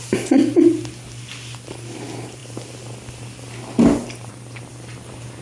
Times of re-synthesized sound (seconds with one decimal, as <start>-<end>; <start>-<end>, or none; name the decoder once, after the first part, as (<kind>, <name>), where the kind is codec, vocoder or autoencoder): none